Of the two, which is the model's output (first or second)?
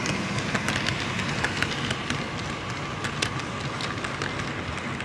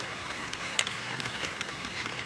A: second